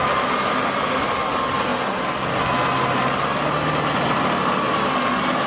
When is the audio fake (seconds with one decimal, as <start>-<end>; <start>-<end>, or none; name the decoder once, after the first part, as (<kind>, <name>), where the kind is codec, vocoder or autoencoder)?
none